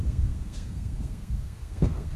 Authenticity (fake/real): fake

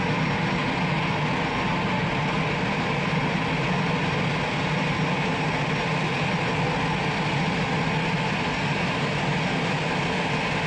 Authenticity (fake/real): real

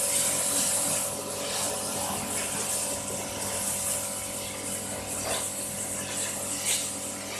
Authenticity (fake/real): real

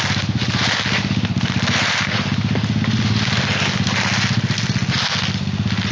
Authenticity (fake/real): real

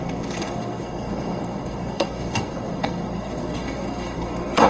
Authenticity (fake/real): fake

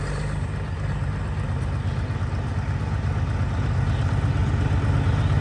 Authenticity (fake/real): real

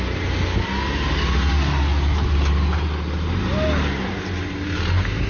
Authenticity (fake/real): real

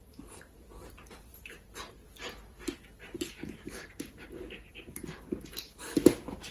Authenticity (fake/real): real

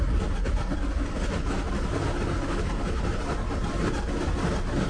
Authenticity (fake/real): real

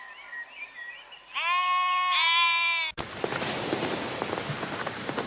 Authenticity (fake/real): real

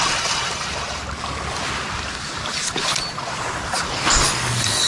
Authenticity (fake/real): real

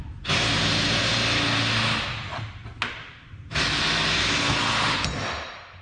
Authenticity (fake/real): real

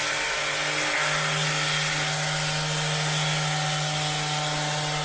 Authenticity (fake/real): real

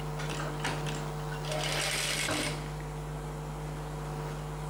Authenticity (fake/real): real